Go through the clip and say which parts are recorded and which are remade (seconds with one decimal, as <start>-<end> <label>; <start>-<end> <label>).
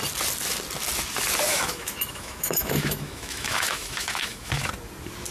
0.0-1.5 recorded; 1.5-4.7 remade; 4.7-5.3 recorded